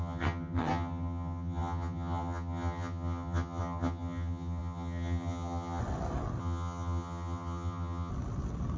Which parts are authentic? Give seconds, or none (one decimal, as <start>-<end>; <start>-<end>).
5.8-6.4; 8.1-8.8